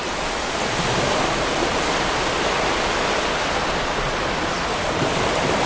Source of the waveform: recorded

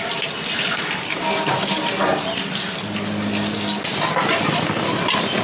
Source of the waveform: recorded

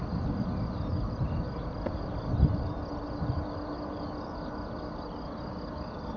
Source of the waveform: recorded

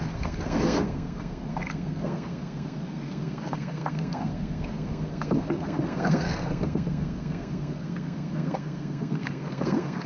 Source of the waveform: remade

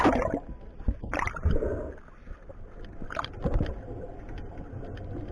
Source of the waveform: recorded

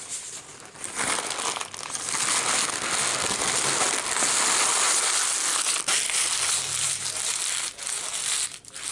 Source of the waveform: recorded